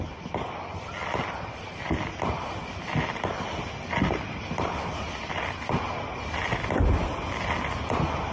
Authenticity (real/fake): real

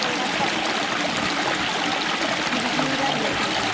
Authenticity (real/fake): real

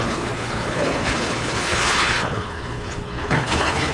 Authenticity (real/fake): fake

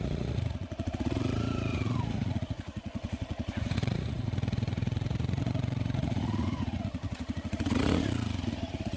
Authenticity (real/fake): fake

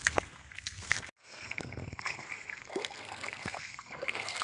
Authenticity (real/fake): fake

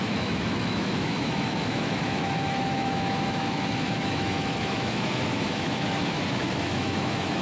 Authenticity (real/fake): fake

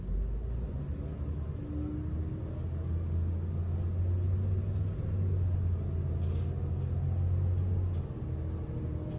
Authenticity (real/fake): real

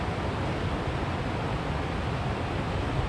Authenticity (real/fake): real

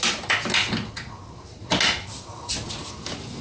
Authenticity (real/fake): real